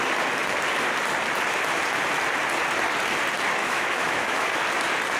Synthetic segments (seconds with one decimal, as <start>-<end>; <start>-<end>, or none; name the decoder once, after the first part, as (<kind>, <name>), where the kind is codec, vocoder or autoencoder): 3.6-4.5 (autoencoder, DAC-VAE)